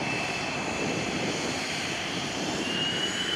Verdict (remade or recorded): remade